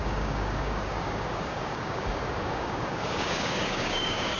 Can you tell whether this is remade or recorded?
remade